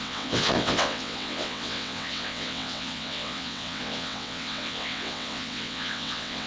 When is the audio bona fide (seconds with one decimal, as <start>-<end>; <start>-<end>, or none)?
none